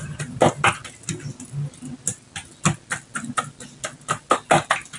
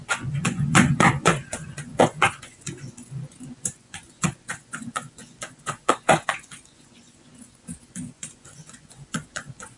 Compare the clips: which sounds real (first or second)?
first